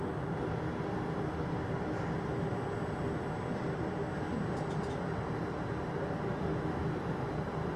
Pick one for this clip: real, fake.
real